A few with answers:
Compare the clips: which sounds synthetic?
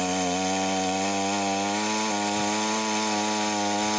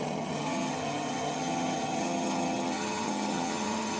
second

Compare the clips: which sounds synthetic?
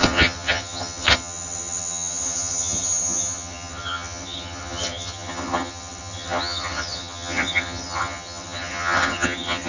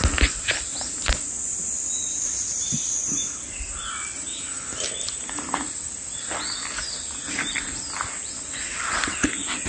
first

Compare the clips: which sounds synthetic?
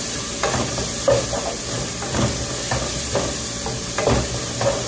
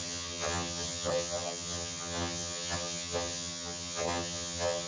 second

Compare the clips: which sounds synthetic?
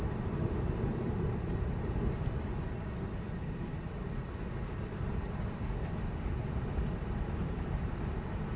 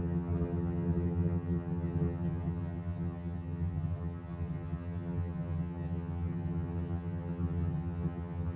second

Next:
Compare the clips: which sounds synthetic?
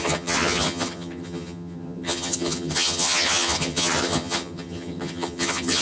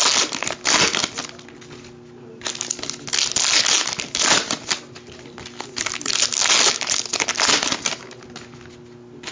first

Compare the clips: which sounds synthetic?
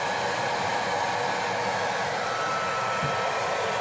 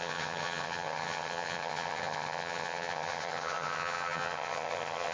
second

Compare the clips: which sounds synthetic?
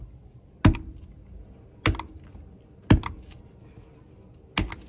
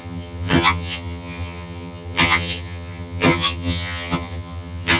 second